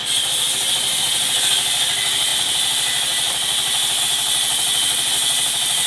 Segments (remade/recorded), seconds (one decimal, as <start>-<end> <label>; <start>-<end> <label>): 0.0-5.9 recorded